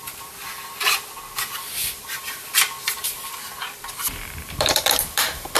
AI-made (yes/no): yes